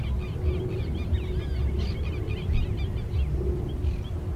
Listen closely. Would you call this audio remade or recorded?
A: recorded